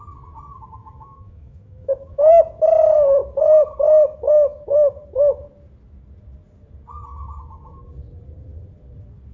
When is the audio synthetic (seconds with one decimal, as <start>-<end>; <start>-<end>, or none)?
0.8-2.4